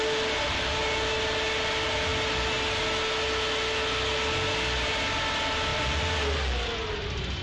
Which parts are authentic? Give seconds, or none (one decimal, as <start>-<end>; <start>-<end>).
0.0-7.4